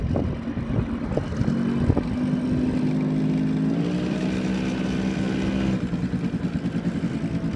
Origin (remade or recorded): recorded